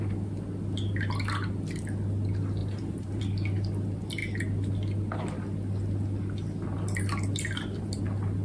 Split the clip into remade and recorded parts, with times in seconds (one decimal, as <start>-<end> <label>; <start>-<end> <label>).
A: 0.0-2.6 recorded; 2.6-3.2 remade; 3.2-8.4 recorded